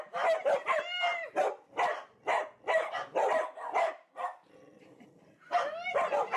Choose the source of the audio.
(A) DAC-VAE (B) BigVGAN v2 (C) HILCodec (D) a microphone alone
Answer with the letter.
D